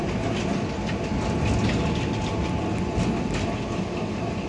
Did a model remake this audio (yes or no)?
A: no